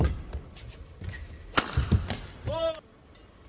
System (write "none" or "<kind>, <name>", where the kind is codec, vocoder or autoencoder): none